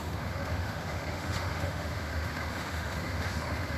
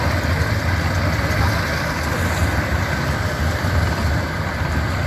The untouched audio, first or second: second